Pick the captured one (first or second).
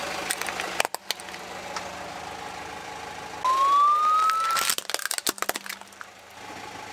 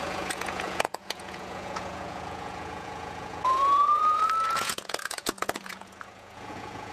first